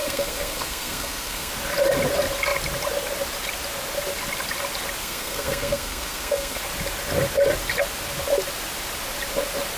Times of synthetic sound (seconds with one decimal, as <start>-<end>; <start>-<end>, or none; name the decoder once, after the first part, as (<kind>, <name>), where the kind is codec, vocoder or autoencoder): 0.0-1.5 (codec, SNAC); 5.0-6.6